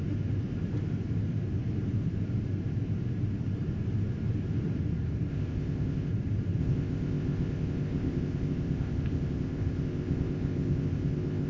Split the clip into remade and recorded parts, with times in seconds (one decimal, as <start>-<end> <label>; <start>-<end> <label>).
0.0-5.3 recorded; 5.3-6.1 remade; 6.1-6.6 recorded; 6.6-11.5 remade